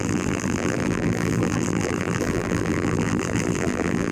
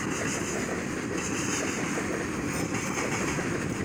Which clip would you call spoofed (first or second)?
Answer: first